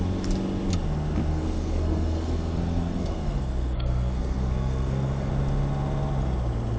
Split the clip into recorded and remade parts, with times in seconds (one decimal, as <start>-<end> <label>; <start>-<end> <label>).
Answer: 0.0-1.3 recorded; 1.3-5.3 remade; 5.3-6.8 recorded